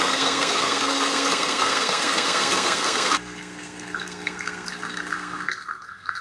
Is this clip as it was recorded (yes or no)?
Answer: no